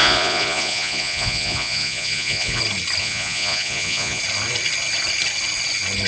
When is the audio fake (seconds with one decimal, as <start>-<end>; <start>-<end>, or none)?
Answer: 0.0-2.6; 3.0-4.2